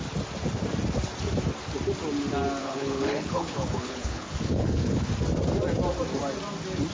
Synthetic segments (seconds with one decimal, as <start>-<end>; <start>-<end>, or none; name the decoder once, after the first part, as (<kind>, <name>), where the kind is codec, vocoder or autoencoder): 2.6-5.1 (codec, HILCodec)